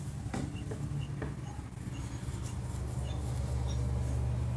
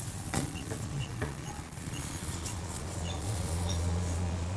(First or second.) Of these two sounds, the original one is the first